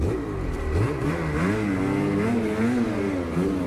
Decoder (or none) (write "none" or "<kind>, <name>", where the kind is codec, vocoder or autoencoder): none